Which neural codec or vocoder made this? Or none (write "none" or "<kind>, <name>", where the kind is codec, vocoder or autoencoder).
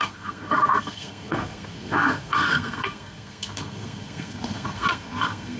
codec, SNAC